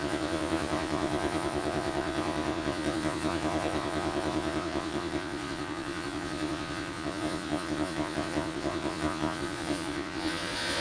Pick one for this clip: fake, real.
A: fake